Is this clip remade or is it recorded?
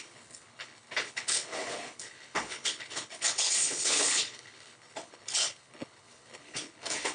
remade